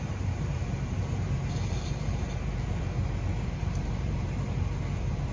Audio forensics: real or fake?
fake